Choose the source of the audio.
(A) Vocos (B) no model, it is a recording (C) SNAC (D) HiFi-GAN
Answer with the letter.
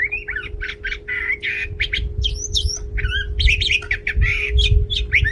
B